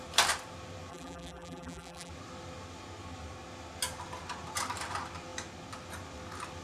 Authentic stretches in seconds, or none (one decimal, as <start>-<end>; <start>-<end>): 0.0-0.9; 2.1-6.6